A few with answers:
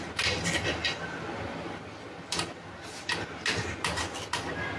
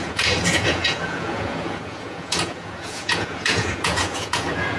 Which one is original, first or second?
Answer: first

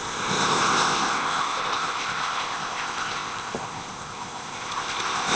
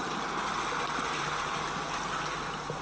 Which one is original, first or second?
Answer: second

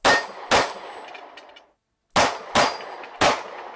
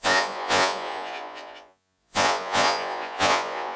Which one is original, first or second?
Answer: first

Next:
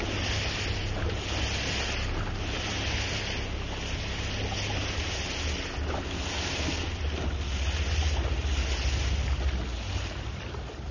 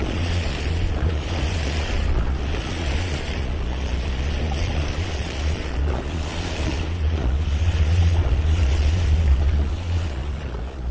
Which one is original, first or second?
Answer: first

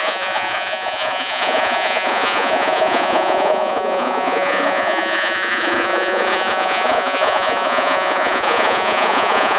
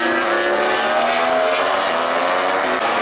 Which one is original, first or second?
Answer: second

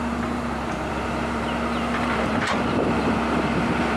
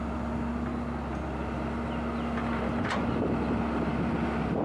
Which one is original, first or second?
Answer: second